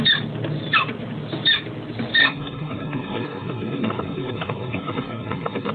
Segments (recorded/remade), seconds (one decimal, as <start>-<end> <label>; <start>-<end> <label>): 0.0-2.2 recorded; 2.2-5.7 remade